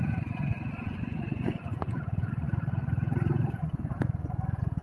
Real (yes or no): no